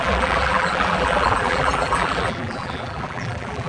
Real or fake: fake